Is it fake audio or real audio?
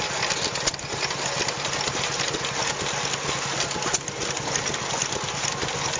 real